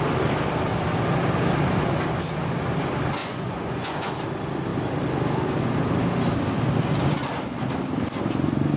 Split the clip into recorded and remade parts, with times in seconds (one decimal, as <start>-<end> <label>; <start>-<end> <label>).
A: 0.0-3.2 recorded; 3.2-4.1 remade; 4.1-8.8 recorded